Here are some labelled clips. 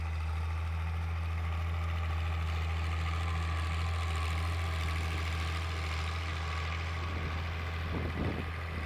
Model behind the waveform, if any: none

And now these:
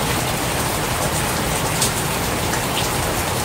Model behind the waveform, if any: none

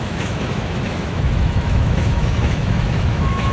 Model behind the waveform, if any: autoencoder, DAC-VAE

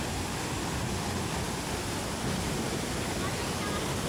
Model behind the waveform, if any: none